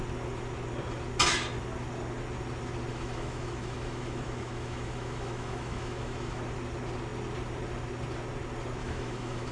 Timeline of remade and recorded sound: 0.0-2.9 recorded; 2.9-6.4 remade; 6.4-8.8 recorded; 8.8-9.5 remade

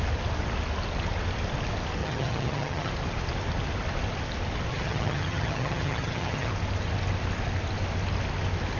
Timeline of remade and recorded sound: 0.0-2.0 recorded; 2.0-2.9 remade; 2.9-4.7 recorded; 4.7-6.5 remade; 6.5-8.8 recorded

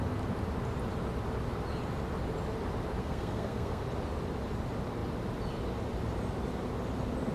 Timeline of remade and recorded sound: 0.0-3.0 recorded; 3.0-3.8 remade; 3.8-7.3 recorded

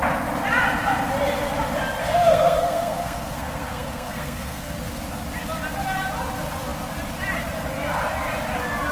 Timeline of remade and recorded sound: 0.0-2.0 recorded; 2.0-4.8 remade; 4.8-8.9 recorded

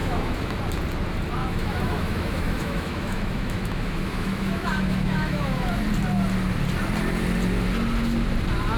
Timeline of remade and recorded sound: 0.0-0.6 remade; 0.6-1.4 recorded; 1.4-5.7 remade; 5.7-8.8 recorded